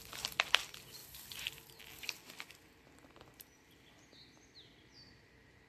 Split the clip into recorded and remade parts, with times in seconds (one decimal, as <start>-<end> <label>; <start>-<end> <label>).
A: 0.0-5.7 recorded